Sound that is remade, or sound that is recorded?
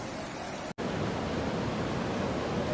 recorded